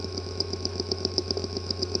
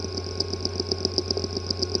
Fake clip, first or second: first